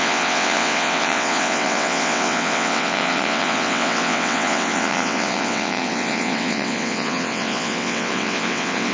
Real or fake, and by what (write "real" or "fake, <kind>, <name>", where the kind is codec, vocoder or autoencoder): fake, vocoder, WaveNeXt